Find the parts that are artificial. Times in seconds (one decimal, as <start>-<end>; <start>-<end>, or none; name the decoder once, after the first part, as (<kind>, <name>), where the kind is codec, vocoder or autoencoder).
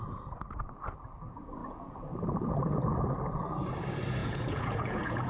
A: 1.6-2.1 (vocoder, Vocos); 4.2-5.3